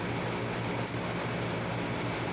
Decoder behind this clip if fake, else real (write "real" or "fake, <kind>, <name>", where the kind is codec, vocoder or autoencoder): real